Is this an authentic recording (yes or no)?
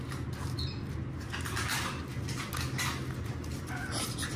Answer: yes